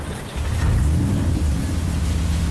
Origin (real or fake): real